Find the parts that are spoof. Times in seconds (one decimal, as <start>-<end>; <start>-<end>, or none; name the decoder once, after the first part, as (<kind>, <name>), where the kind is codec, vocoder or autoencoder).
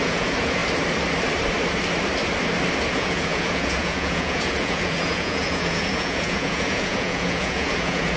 0.0-0.6 (vocoder, Vocos); 2.9-8.2